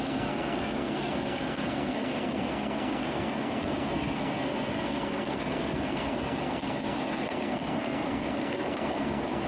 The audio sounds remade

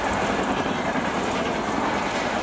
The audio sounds recorded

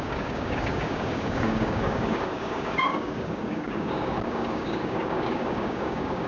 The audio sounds remade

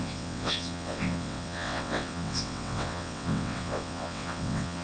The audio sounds remade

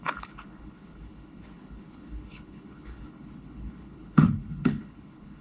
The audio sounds remade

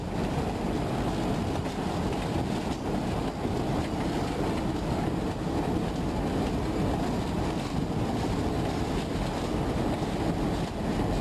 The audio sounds recorded